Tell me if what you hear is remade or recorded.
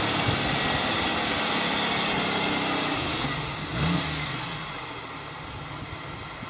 recorded